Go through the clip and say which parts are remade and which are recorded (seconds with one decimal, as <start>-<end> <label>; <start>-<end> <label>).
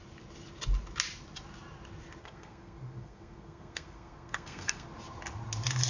0.0-2.2 recorded; 2.2-4.9 remade; 4.9-5.9 recorded